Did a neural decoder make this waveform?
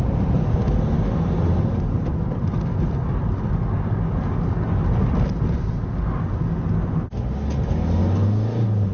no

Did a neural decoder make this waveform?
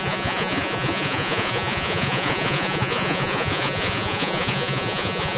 yes